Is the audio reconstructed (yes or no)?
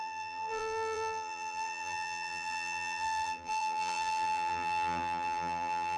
yes